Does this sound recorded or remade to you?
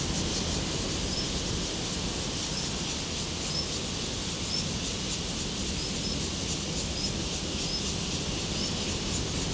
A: recorded